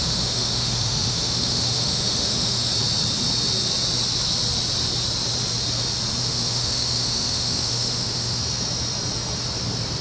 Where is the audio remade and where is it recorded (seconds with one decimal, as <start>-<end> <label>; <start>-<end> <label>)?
0.0-2.7 remade; 2.7-6.2 recorded; 6.2-8.4 remade; 8.4-10.0 recorded